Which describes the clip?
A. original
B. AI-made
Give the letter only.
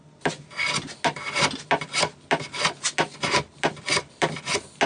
A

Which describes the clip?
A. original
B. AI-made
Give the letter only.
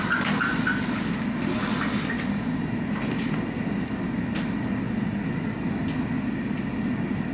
A